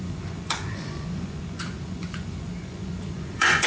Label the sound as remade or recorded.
remade